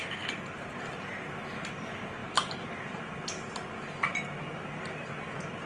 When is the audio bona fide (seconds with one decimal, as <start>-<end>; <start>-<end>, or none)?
0.0-5.7